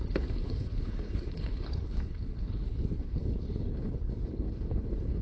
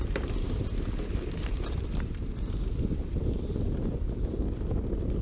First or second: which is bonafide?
second